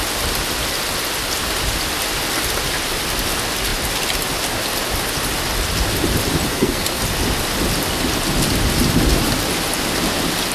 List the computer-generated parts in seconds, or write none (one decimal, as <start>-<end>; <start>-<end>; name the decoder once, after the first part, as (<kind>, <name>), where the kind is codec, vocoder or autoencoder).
6.5-7.0 (codec, SNAC)